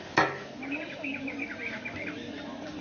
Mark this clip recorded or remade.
recorded